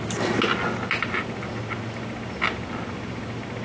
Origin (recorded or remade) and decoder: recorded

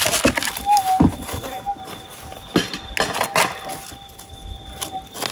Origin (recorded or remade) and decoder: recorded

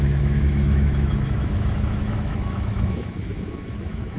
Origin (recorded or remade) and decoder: remade, autoencoder, DAC-VAE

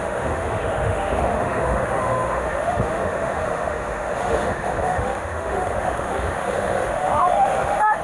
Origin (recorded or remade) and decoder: remade, autoencoder, DAC-VAE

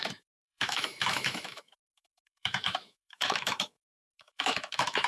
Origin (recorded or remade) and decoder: remade, autoencoder, DAC-VAE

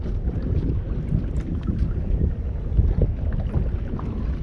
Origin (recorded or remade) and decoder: recorded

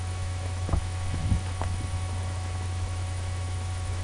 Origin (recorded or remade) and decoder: remade, autoencoder, DAC-VAE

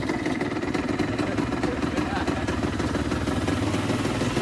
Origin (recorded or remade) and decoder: recorded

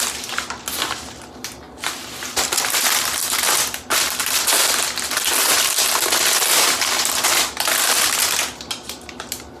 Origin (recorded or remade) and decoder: recorded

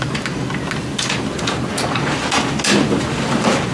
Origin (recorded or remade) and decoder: recorded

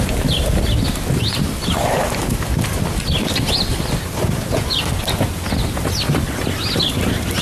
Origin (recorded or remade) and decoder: recorded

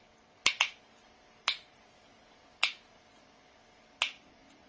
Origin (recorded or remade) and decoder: recorded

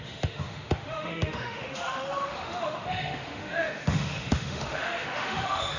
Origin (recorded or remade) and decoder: remade, autoencoder, DAC-VAE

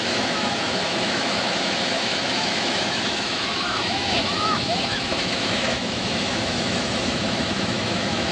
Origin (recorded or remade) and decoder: remade, autoencoder, DAC-VAE